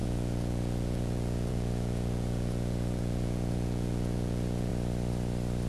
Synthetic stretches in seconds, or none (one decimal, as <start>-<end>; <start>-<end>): 0.0-4.7